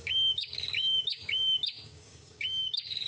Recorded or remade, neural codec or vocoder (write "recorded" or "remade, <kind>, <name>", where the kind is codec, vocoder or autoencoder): remade, codec, DAC